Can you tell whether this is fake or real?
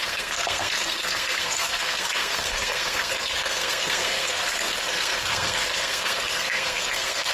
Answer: fake